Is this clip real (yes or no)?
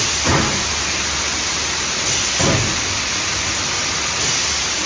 yes